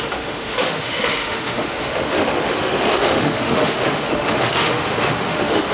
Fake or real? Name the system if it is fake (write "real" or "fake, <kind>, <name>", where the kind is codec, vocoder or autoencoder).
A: fake, autoencoder, DAC-VAE